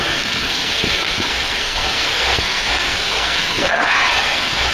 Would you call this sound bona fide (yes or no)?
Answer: no